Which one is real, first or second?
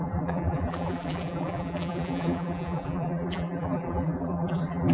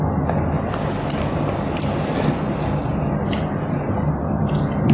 second